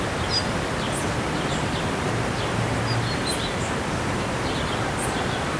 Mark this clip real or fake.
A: real